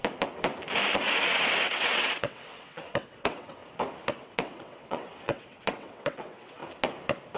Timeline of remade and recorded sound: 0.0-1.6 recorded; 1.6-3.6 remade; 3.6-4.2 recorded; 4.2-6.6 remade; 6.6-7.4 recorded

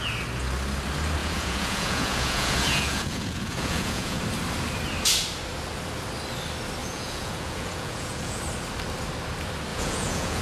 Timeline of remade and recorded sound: 0.0-1.2 recorded; 1.2-4.2 remade; 4.2-6.8 recorded; 6.8-8.4 remade; 8.4-9.7 recorded; 9.7-10.4 remade

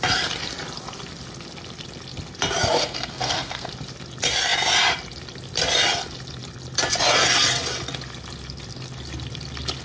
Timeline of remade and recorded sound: 0.0-2.8 recorded; 2.8-3.7 remade; 3.7-9.8 recorded

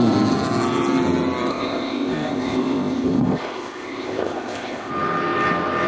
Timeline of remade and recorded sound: 0.0-1.5 recorded; 1.5-4.9 remade; 4.9-5.9 recorded

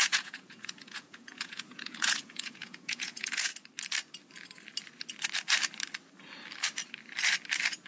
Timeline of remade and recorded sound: 0.0-3.5 remade; 3.5-7.9 recorded

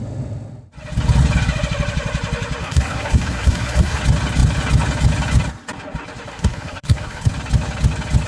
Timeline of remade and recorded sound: 0.0-2.6 recorded; 2.6-4.0 remade; 4.0-6.3 recorded; 6.3-7.3 remade; 7.3-8.3 recorded

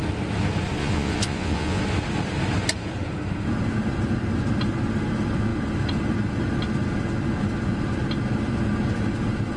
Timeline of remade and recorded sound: 0.0-0.8 recorded; 0.8-1.8 remade; 1.8-9.6 recorded